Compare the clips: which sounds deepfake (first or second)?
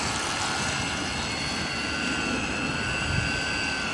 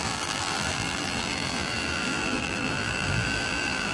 second